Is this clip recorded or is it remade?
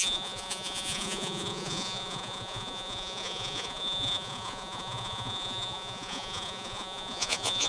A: remade